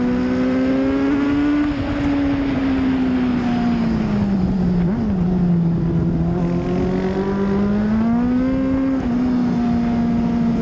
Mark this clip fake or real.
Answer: real